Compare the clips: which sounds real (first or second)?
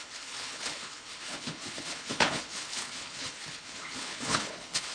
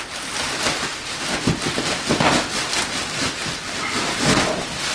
second